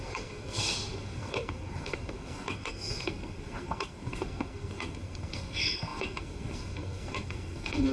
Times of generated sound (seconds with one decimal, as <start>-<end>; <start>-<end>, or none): 0.0-7.9